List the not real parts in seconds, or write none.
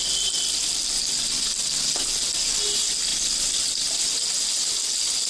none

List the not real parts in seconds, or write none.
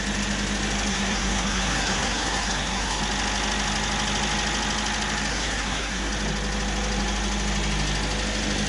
0.9-3.0 (codec, SNAC); 5.3-6.1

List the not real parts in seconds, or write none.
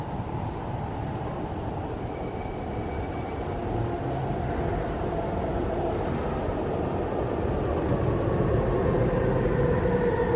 none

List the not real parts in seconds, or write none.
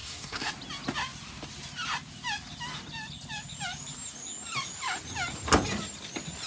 0.0-0.5 (codec, SNAC)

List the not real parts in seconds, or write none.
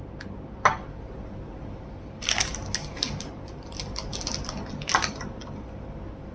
none